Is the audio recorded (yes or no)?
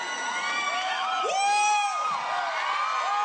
yes